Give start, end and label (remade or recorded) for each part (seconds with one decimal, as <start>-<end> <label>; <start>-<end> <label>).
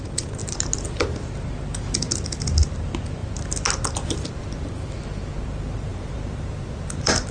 0.0-5.9 recorded; 5.9-7.3 remade